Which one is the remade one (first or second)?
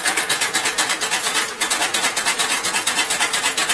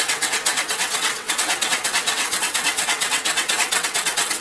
second